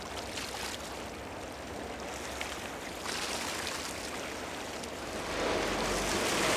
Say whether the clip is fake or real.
real